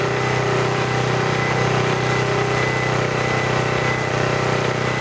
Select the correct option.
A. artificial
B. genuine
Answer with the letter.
B